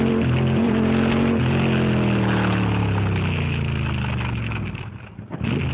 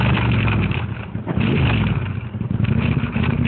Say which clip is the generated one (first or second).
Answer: second